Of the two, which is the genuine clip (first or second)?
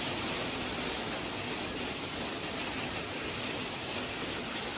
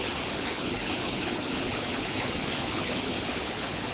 first